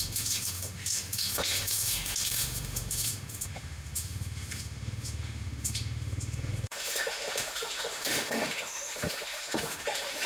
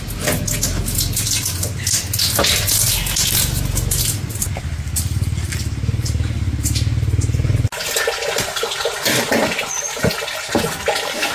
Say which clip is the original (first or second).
second